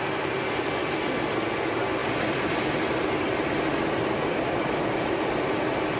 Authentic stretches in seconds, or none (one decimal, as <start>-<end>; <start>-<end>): 0.0-2.0; 5.1-6.0